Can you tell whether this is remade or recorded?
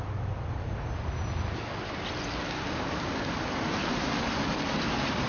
recorded